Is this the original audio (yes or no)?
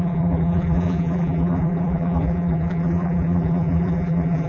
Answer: no